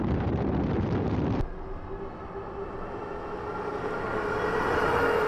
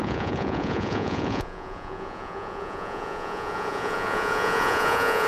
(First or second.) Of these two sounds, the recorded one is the first